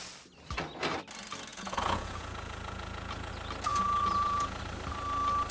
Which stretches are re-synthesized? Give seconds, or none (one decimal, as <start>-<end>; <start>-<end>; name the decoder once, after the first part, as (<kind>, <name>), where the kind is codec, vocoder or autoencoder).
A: 1.5-3.3 (vocoder, Vocos); 3.7-4.6